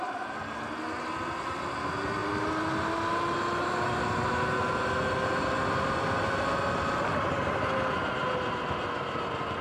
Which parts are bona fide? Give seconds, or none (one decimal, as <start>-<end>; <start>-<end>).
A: 0.0-9.6